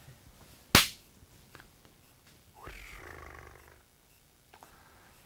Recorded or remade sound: recorded